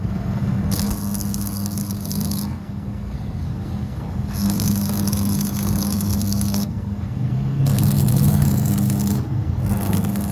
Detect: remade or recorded remade